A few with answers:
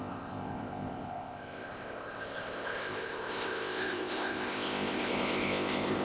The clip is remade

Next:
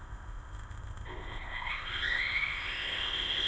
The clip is remade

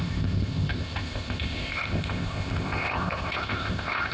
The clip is remade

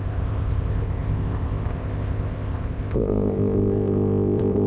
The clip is remade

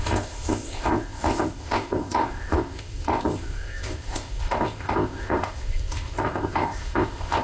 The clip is remade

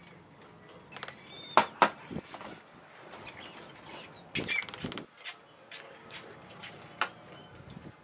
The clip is recorded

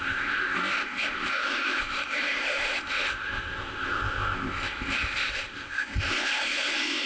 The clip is remade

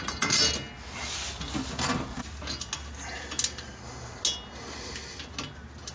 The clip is recorded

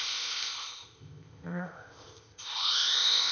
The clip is remade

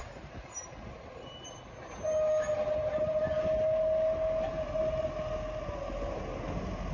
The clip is recorded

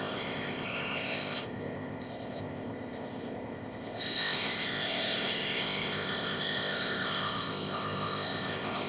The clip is remade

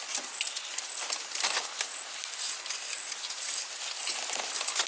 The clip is recorded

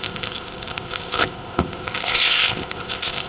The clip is remade